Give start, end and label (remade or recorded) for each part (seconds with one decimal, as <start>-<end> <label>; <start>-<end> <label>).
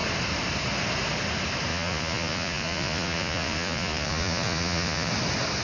0.0-1.7 recorded; 1.7-5.1 remade; 5.1-5.6 recorded